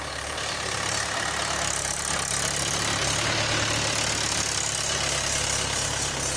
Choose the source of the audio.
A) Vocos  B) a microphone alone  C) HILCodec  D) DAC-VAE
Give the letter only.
B